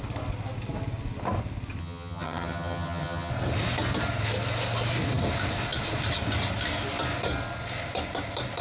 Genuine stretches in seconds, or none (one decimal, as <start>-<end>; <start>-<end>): 0.0-1.8; 3.3-8.6